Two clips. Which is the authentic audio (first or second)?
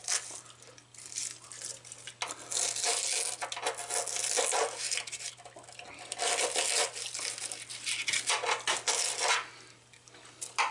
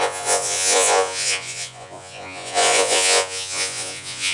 first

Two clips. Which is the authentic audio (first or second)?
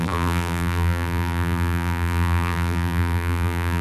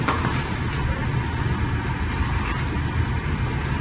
second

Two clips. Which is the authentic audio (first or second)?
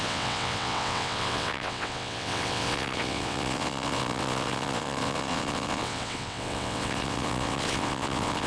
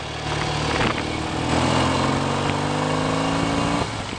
second